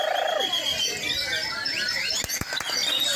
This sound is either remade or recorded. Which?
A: recorded